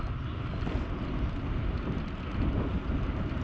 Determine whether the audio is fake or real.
real